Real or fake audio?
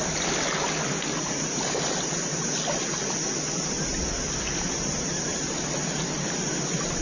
real